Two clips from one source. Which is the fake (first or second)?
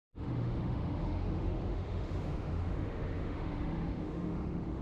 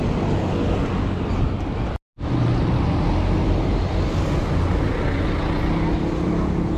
first